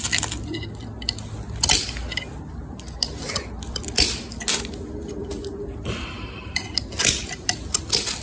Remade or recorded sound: recorded